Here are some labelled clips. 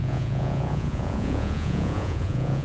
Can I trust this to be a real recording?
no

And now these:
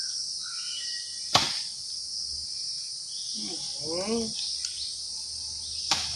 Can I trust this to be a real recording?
yes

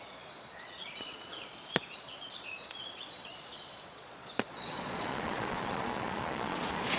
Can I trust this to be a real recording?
no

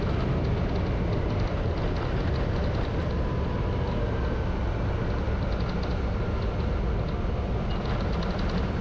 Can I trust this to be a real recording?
yes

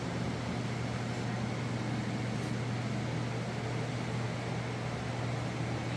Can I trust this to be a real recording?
yes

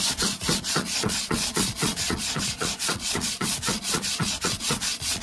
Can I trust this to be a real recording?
no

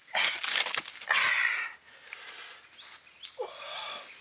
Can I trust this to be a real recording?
yes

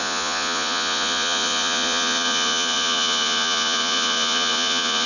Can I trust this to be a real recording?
no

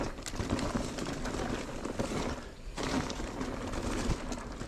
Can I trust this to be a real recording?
yes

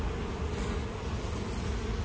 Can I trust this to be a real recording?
yes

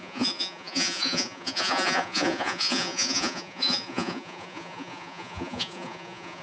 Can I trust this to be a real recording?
no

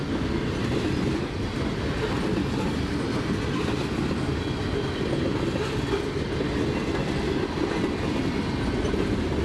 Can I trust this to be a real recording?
yes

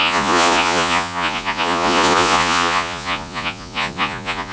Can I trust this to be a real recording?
no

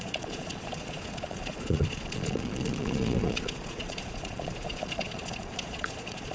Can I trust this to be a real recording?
no